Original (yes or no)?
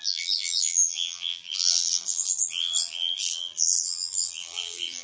no